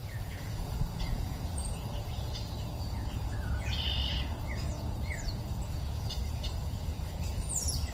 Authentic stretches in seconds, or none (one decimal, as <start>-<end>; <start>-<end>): none

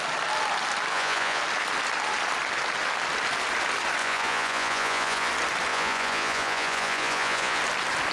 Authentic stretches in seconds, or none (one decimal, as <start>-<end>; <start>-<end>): 0.0-0.9; 1.4-4.0; 5.3-5.7; 7.6-8.1

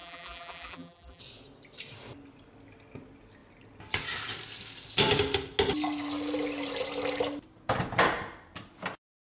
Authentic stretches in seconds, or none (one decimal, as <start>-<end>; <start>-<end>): 1.2-9.4

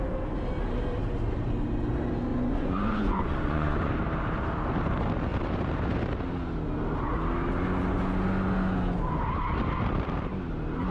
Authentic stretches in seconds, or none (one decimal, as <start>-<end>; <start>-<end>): 0.0-2.3; 3.9-10.9